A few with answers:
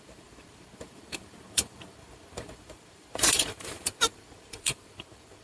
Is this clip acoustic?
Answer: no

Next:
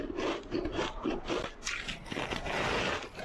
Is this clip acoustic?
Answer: yes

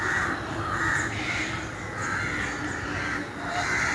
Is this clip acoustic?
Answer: yes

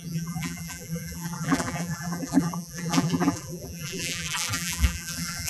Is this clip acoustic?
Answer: no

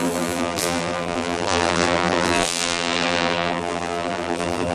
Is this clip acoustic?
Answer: no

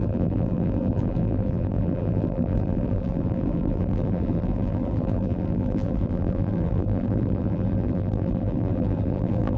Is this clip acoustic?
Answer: no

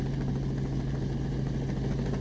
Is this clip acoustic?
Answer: yes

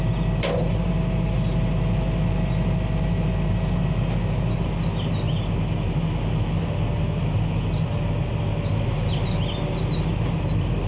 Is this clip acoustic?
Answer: yes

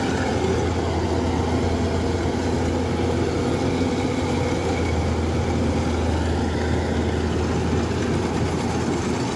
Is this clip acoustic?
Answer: yes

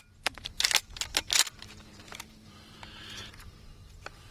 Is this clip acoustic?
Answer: no